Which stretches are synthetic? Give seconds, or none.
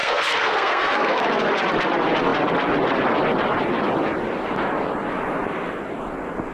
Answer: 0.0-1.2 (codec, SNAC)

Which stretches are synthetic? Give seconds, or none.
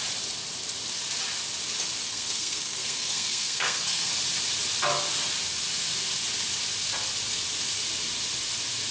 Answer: 2.0-4.1 (codec, SNAC)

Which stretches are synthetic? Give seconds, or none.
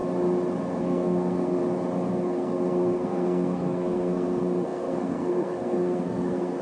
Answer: 0.8-1.6 (codec, SNAC); 2.1-6.6